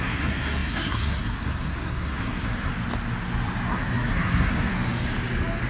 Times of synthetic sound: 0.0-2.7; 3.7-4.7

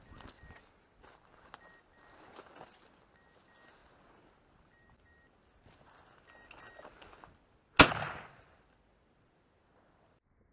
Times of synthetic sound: none